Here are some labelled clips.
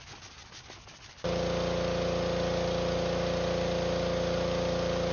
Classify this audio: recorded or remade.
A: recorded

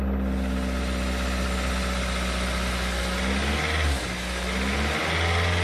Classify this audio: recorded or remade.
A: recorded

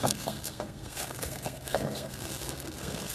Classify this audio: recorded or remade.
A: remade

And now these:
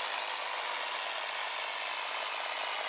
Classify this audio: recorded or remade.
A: recorded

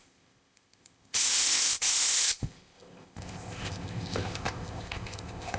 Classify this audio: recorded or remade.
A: remade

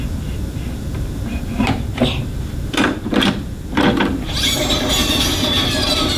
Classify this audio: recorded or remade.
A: remade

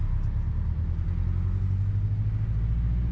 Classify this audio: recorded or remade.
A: recorded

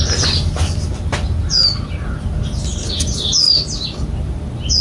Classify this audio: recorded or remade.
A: recorded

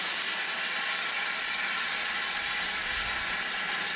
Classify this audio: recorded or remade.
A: recorded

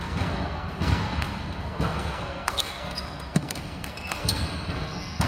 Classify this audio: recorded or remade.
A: remade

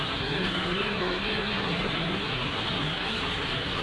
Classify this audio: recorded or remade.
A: remade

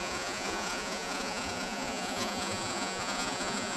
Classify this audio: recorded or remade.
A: remade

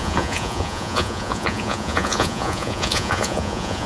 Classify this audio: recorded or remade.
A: remade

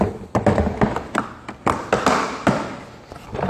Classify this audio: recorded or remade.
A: recorded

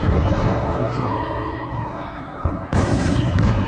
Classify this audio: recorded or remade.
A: remade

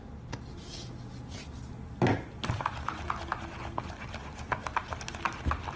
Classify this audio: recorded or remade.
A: recorded